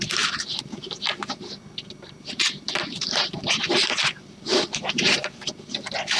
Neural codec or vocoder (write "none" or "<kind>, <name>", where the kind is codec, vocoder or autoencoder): vocoder, BigVGAN v2